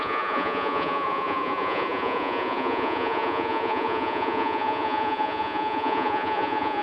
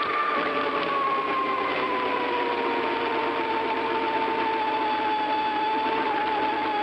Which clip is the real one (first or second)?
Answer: second